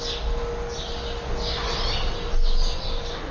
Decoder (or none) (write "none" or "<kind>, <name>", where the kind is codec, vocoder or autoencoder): none